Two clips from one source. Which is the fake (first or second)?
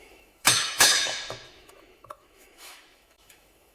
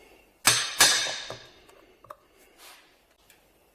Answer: first